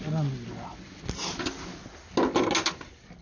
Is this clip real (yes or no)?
yes